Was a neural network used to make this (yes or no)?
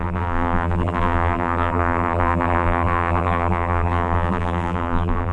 yes